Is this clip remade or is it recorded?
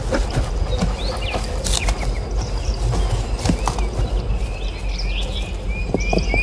recorded